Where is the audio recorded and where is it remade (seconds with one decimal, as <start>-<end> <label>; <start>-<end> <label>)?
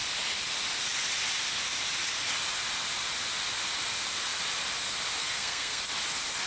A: 0.0-5.2 recorded; 5.2-5.8 remade; 5.8-6.5 recorded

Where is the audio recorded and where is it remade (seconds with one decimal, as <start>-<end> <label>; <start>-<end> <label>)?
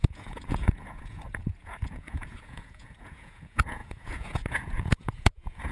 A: 0.0-5.7 remade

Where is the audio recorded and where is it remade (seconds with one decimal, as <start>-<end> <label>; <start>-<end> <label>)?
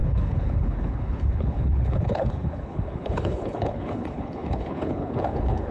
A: 0.0-5.7 remade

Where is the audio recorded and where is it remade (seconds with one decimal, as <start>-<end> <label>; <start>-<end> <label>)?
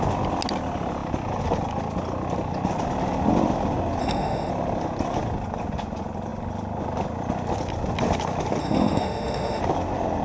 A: 0.0-4.0 recorded; 4.0-4.5 remade; 4.5-8.6 recorded; 8.6-9.6 remade; 9.6-10.2 recorded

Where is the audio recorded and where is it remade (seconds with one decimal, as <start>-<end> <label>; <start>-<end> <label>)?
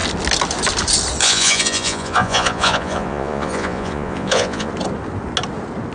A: 0.0-1.2 recorded; 1.2-4.7 remade; 4.7-5.9 recorded